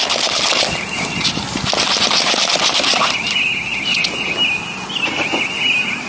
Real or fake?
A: real